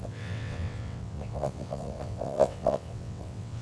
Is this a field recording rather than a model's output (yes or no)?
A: no